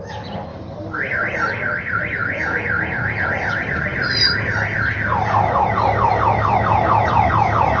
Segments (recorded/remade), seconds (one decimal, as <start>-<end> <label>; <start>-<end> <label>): 0.0-2.2 recorded; 2.2-3.3 remade; 3.3-7.8 recorded